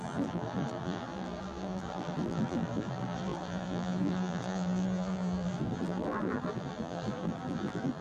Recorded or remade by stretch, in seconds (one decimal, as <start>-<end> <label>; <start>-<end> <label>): 0.0-8.0 remade

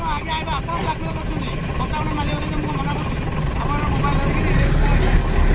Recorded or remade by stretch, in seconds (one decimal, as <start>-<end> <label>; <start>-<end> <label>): 0.0-5.5 recorded

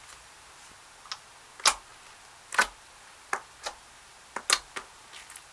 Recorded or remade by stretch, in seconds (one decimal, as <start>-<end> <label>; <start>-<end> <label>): 0.0-5.5 recorded

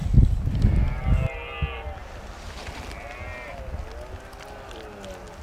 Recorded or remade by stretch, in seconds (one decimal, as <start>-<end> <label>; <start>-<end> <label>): 0.0-1.0 remade; 1.0-5.4 recorded

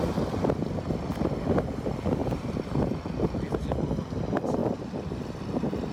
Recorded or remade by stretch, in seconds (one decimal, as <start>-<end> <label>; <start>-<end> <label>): 0.0-5.9 recorded

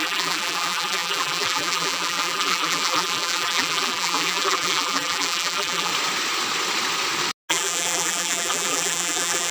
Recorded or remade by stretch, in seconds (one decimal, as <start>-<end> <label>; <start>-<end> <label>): 0.0-5.9 remade; 5.9-7.5 recorded; 7.5-9.5 remade